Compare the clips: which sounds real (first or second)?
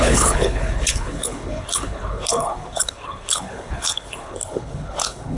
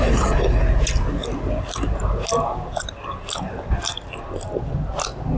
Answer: second